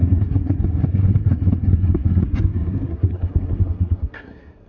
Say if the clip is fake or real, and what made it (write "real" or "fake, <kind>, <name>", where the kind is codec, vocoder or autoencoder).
fake, codec, SNAC